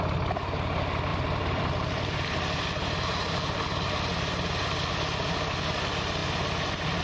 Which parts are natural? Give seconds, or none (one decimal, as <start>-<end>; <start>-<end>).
0.0-1.1; 4.9-7.0